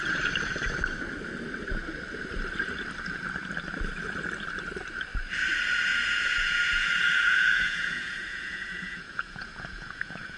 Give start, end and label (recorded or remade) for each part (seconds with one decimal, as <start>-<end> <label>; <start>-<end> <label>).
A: 0.0-5.9 recorded; 5.9-10.4 remade